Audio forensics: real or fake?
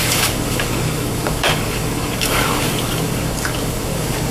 fake